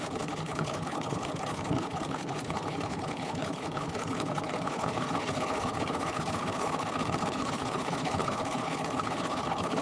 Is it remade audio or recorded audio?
remade